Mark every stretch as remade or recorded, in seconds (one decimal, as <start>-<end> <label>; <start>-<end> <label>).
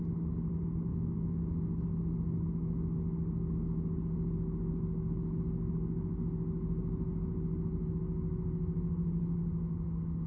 0.0-0.9 recorded; 0.9-1.4 remade; 1.4-10.3 recorded